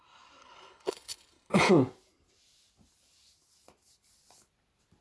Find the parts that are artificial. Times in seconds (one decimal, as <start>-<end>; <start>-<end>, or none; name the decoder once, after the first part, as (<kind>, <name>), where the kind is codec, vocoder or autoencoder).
0.4-1.7 (codec, HILCodec)